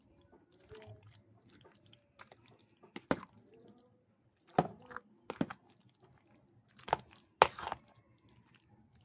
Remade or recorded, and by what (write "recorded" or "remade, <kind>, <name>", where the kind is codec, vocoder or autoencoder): recorded